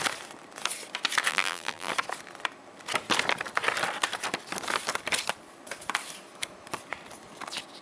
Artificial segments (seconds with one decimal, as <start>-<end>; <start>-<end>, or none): 1.3-1.9